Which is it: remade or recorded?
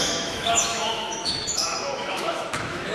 remade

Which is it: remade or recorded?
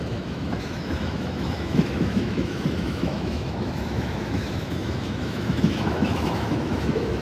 remade